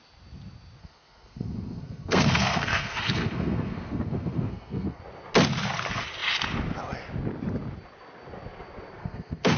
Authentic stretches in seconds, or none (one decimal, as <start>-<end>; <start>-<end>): 0.0-0.8; 5.0-9.0